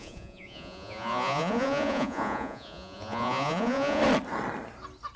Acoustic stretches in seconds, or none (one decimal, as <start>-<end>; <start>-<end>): 4.0-5.2